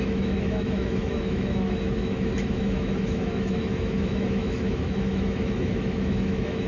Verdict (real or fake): fake